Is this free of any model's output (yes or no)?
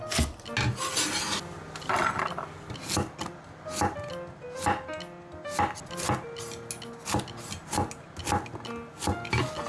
yes